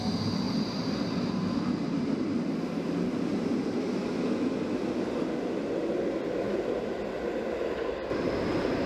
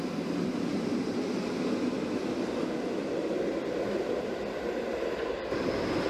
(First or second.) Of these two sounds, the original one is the first